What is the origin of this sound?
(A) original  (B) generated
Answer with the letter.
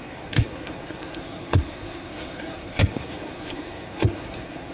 B